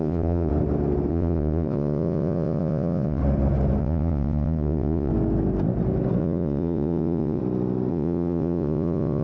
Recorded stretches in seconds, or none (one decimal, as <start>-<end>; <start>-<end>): 0.5-1.1; 3.2-3.8; 5.1-6.2; 7.4-7.9